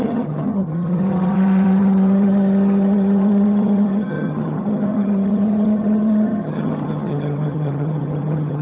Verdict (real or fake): fake